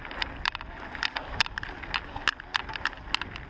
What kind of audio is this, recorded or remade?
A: recorded